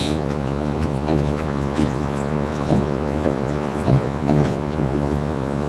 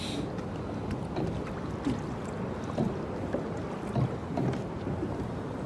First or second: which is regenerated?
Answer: first